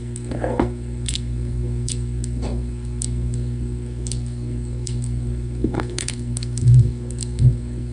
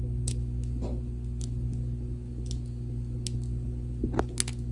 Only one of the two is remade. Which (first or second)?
first